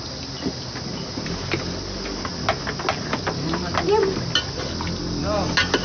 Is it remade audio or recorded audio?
recorded